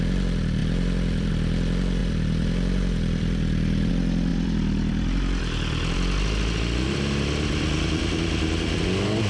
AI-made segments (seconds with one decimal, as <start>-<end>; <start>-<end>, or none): 0.6-1.3; 2.0-3.9; 4.3-8.8